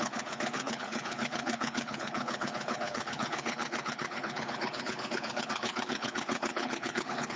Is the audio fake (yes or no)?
yes